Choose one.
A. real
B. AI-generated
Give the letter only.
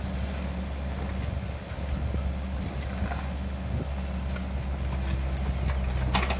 A